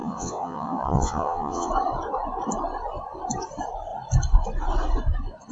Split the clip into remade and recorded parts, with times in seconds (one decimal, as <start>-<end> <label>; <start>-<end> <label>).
0.0-1.7 remade; 1.7-5.5 recorded